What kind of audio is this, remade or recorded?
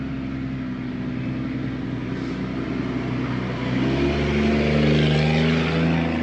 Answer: recorded